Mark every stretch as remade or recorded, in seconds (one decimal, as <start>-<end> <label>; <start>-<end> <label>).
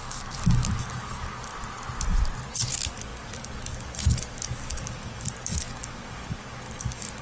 0.0-1.5 remade; 1.5-2.7 recorded; 2.7-7.2 remade